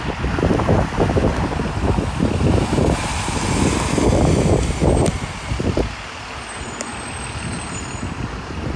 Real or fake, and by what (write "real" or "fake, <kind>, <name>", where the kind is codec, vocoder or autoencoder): real